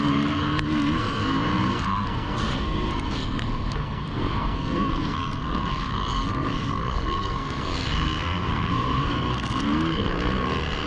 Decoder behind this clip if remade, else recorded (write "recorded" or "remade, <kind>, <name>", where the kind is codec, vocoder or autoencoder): remade, codec, SNAC